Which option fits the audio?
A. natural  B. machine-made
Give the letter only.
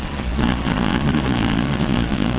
B